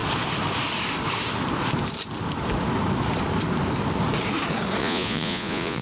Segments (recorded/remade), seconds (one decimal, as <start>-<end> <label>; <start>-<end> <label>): 0.0-4.8 recorded; 4.8-5.8 remade